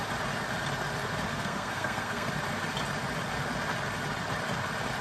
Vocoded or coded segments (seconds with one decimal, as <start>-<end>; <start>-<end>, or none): 1.3-2.3